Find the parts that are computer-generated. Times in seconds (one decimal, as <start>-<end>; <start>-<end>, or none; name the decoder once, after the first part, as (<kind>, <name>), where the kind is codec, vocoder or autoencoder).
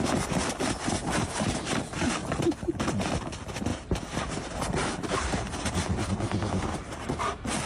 1.0-1.7 (vocoder, BigVGAN v2); 3.7-5.5